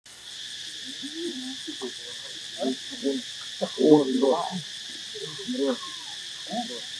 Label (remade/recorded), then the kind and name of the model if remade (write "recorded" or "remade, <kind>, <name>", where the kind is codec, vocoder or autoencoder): recorded